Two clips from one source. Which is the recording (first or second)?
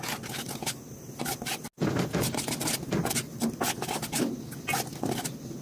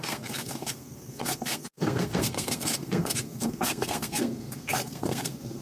first